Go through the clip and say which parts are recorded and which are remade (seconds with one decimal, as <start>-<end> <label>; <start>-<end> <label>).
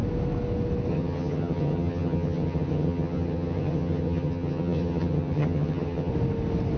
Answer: 0.0-0.9 recorded; 0.9-6.1 remade; 6.1-6.8 recorded